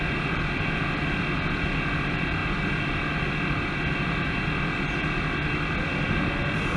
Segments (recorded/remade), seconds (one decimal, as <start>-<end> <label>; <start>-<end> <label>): 0.0-6.8 remade